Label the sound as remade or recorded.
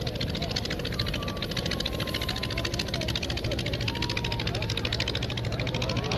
recorded